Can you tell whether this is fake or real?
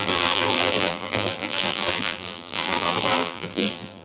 fake